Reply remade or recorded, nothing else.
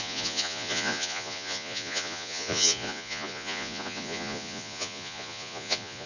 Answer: remade